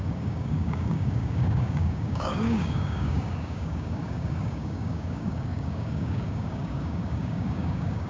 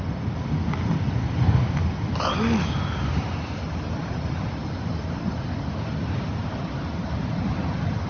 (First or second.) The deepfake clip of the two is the first